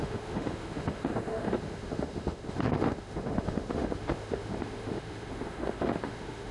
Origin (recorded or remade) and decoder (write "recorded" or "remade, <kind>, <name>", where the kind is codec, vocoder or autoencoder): remade, autoencoder, DAC-VAE